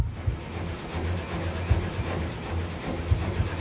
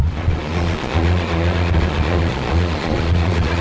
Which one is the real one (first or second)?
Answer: first